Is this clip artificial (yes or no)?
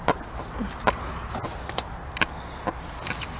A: no